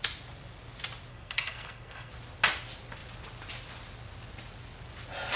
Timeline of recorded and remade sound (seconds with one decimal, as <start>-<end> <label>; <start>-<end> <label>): 0.0-1.1 recorded; 1.1-2.1 remade; 2.1-5.4 recorded